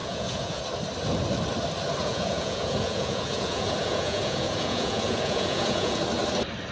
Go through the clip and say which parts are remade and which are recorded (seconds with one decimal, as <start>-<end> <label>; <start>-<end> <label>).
0.0-0.6 remade; 0.6-2.0 recorded; 2.0-6.0 remade; 6.0-6.7 recorded